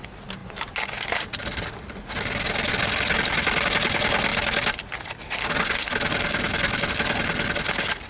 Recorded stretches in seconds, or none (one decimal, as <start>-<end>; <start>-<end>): 0.0-8.1